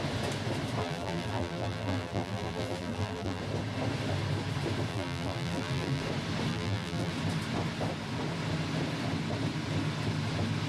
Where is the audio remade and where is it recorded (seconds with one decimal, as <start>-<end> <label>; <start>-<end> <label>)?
0.0-0.8 recorded; 0.8-3.4 remade; 3.4-4.9 recorded; 4.9-6.0 remade; 6.0-6.5 recorded; 6.5-7.1 remade; 7.1-10.7 recorded

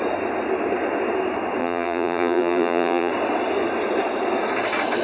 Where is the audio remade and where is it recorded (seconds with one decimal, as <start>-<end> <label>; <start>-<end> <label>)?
0.0-1.6 recorded; 1.6-3.1 remade; 3.1-5.0 recorded

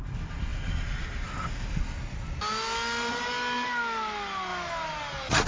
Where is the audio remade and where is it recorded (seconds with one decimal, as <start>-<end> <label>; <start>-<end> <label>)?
0.0-5.5 recorded

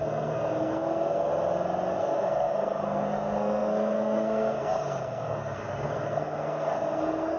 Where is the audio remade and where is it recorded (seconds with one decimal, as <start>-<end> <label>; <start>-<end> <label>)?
0.0-1.3 remade; 1.3-2.0 recorded; 2.0-7.4 remade

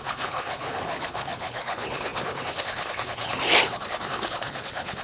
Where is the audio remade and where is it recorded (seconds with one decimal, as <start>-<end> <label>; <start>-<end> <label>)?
0.0-5.0 remade

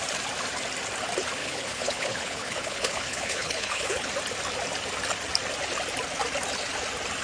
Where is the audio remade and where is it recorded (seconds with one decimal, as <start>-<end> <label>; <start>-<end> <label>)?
0.0-1.4 recorded; 1.4-4.1 remade; 4.1-7.2 recorded

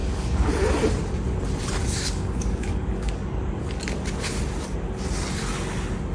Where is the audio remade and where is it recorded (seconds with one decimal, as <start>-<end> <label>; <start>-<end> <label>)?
0.0-0.5 remade; 0.5-1.8 recorded; 1.8-3.8 remade; 3.8-6.1 recorded